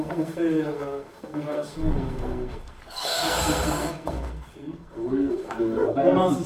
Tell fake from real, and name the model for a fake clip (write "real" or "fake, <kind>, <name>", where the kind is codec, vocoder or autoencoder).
fake, codec, SNAC